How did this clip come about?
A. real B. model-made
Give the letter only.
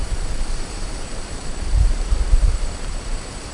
B